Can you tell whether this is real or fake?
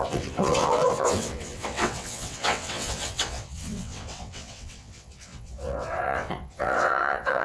fake